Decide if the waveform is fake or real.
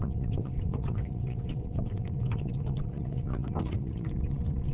fake